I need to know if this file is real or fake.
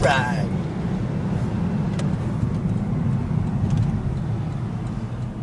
real